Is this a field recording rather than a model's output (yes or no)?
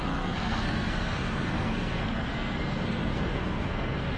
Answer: no